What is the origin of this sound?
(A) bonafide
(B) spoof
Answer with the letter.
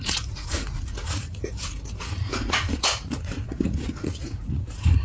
B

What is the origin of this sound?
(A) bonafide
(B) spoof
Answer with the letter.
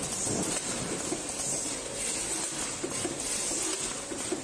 A